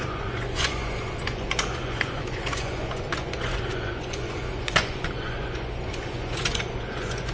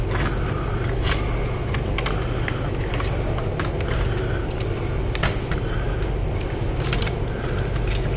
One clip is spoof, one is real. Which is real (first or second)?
second